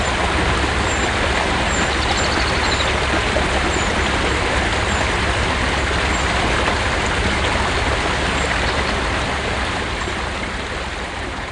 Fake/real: real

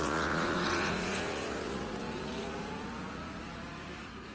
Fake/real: fake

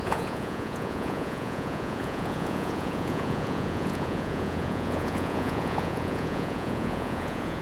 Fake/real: fake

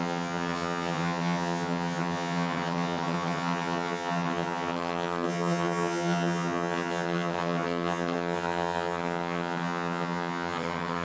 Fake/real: fake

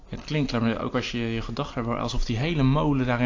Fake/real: real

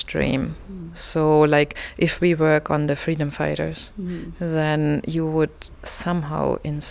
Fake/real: real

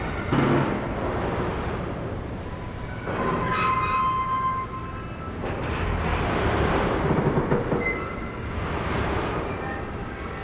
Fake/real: real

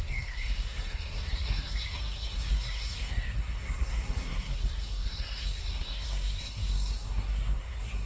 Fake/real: fake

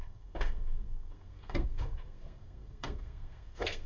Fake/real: fake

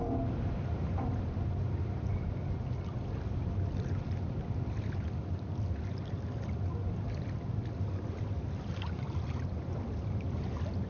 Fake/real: real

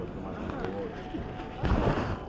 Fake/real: real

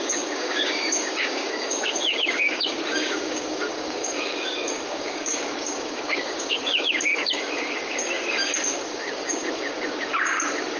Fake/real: fake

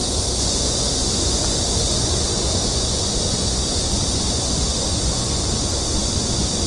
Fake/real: fake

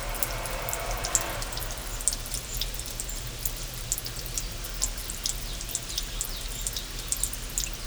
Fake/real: real